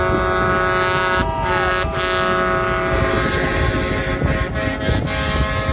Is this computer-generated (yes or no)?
no